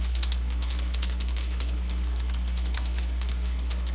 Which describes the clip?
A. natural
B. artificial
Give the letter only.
B